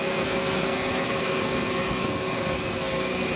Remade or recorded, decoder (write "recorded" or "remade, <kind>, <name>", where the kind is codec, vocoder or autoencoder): remade, codec, SNAC